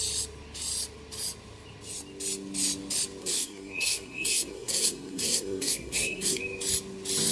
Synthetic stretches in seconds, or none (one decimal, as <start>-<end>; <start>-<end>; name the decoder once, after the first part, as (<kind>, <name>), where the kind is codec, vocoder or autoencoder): 3.2-6.4 (codec, SNAC)